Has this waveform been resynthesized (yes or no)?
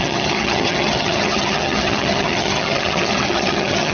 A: yes